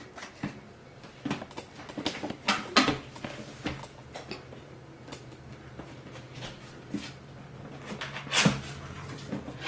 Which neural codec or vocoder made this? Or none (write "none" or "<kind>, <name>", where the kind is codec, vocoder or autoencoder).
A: none